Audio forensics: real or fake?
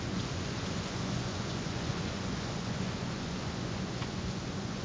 fake